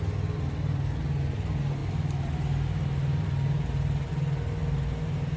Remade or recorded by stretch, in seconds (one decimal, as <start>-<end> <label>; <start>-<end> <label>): 0.0-5.4 recorded